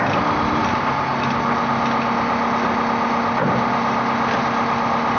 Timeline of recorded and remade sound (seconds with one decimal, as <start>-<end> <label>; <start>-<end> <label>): 0.0-5.2 recorded